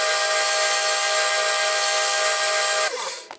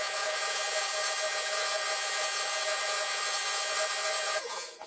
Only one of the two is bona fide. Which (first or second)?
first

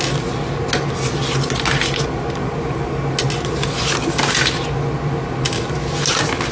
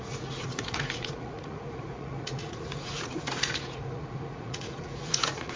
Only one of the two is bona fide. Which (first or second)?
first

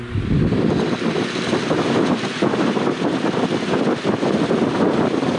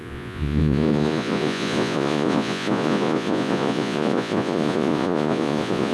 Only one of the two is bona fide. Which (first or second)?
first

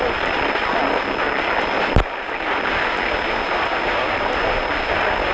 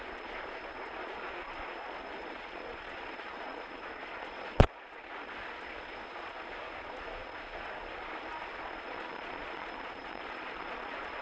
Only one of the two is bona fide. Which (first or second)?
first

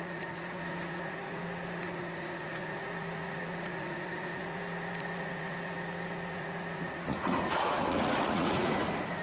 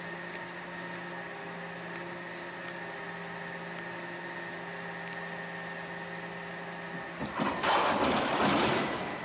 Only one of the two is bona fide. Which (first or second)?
second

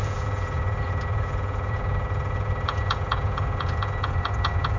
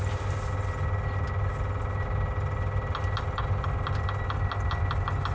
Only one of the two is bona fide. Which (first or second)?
second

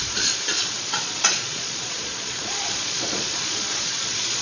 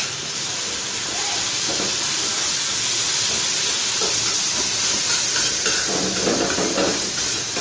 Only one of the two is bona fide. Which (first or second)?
second